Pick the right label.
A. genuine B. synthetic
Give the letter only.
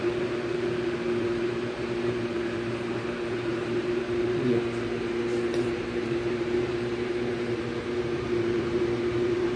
B